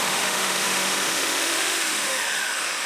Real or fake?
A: fake